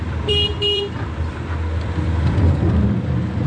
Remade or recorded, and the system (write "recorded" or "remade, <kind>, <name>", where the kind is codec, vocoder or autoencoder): remade, vocoder, BigVGAN v2